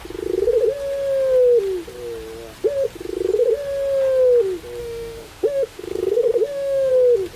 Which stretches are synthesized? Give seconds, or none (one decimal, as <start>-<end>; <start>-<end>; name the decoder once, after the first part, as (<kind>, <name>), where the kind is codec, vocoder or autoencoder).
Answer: 4.8-6.9 (autoencoder, DAC-VAE)

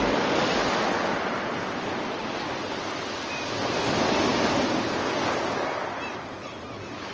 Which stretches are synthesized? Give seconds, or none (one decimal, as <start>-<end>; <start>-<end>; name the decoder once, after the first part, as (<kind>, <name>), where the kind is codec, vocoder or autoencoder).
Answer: none

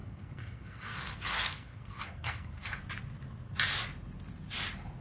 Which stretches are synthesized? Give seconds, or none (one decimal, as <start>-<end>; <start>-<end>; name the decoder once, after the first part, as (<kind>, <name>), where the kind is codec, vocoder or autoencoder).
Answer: 0.0-2.8 (codec, SNAC)

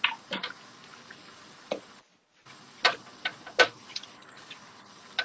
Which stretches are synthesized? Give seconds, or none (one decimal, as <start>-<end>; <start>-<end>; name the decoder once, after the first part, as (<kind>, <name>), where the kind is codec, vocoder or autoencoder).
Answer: none

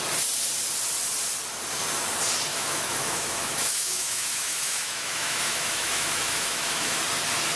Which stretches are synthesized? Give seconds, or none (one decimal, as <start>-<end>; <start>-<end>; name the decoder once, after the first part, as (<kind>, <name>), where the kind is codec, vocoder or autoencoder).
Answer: 2.5-7.0 (autoencoder, DAC-VAE)

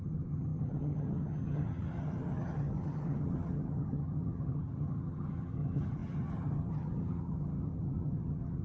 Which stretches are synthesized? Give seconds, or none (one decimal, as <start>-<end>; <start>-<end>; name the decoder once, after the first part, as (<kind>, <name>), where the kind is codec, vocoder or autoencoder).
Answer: 0.0-8.6 (vocoder, HiFi-GAN)

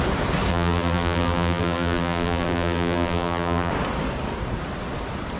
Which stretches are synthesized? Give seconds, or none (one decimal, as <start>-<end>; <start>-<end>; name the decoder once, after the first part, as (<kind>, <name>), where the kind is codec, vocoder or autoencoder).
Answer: 0.5-3.7 (vocoder, BigVGAN v2)